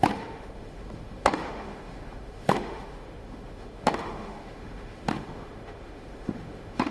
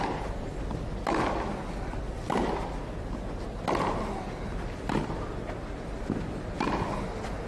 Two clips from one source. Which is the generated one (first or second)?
first